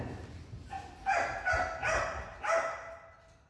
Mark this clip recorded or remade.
recorded